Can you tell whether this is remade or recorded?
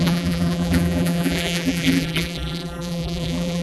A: remade